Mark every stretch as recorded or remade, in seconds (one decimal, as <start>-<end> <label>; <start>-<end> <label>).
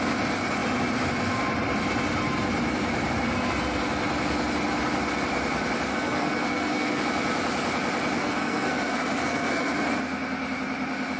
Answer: 0.0-5.9 recorded; 5.9-7.0 remade; 7.0-8.2 recorded; 8.2-9.8 remade; 9.8-11.2 recorded